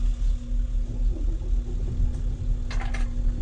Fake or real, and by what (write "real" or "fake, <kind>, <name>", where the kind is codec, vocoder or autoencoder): real